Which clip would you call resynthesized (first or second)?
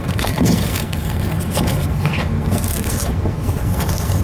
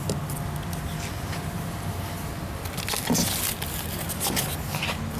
first